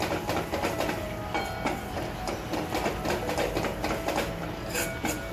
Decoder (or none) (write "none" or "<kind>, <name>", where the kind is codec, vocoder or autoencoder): none